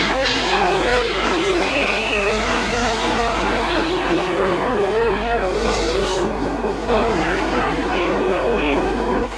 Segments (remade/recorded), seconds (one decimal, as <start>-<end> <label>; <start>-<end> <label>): 0.0-9.4 remade